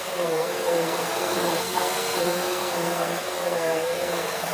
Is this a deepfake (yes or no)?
yes